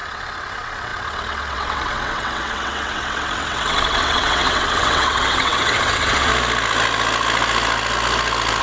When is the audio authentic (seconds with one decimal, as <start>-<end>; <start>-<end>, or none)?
6.3-8.6